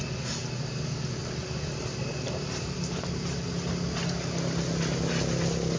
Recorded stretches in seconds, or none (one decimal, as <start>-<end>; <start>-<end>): 0.0-5.8